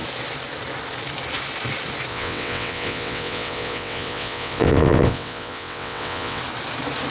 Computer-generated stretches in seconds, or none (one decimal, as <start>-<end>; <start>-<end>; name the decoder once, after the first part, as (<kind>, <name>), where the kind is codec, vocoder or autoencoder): 2.1-6.4 (vocoder, WaveNeXt)